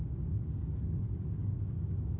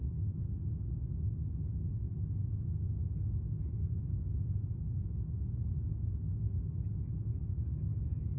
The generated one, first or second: first